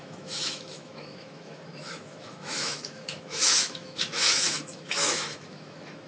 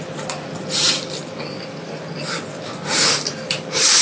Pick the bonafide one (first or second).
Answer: second